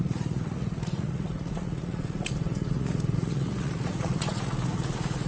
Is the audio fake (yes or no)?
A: yes